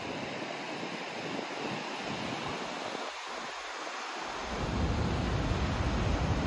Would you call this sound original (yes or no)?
yes